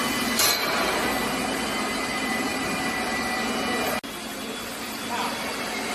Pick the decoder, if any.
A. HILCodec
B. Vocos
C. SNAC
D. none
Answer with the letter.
D